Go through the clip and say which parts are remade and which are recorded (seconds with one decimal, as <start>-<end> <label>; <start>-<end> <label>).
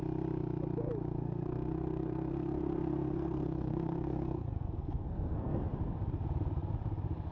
0.0-1.2 recorded; 1.2-5.6 remade; 5.6-7.3 recorded